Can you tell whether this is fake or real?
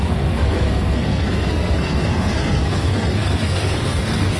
fake